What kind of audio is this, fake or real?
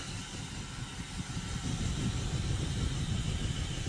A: real